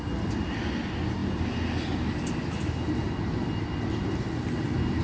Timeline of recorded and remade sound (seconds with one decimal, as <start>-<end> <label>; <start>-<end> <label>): 0.0-5.0 recorded